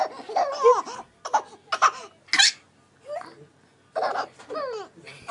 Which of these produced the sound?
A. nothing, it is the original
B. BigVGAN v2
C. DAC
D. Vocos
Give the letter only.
A